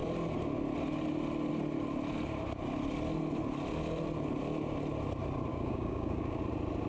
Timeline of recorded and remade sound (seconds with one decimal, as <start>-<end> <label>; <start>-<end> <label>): 0.0-5.5 recorded; 5.5-6.4 remade; 6.4-6.9 recorded